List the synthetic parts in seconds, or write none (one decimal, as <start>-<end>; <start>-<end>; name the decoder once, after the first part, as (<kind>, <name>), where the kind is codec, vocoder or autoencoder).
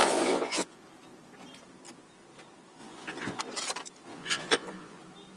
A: 0.0-0.8 (vocoder, Vocos); 2.8-3.4; 4.1-5.0